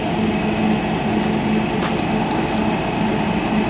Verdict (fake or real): real